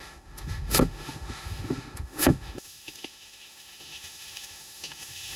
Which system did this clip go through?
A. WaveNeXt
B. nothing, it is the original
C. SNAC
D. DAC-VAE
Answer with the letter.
D